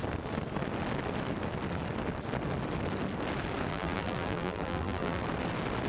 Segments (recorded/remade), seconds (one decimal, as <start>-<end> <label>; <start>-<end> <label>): 0.0-3.7 recorded; 3.7-5.2 remade; 5.2-5.9 recorded